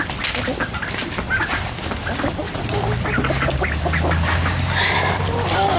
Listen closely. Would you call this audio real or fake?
real